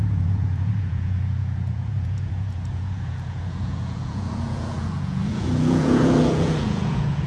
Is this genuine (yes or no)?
no